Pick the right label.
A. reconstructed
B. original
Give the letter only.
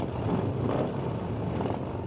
B